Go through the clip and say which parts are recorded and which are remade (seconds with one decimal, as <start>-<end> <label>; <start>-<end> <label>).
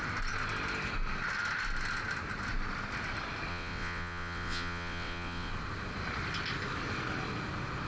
0.0-3.5 recorded; 3.5-5.5 remade; 5.5-7.9 recorded